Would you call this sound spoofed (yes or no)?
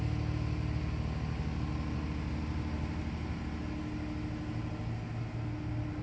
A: no